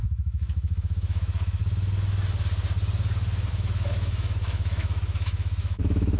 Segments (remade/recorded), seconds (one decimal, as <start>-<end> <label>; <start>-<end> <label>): 0.0-1.6 remade; 1.6-3.5 recorded; 3.5-6.2 remade